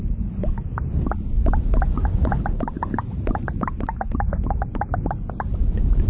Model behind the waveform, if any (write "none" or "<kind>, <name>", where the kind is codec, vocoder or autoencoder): none